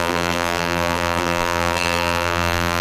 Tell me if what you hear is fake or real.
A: fake